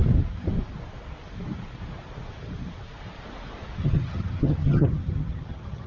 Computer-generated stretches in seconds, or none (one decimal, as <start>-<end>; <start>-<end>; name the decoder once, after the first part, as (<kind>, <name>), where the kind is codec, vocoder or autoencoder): 3.8-5.9 (vocoder, HiFi-GAN)